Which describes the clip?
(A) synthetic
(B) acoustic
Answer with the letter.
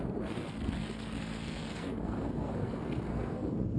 A